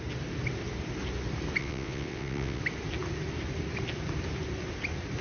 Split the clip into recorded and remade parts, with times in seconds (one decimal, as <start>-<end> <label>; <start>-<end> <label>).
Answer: 0.0-1.6 recorded; 1.6-2.6 remade; 2.6-5.2 recorded